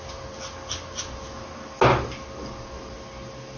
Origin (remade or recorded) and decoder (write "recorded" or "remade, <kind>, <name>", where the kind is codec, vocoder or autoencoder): recorded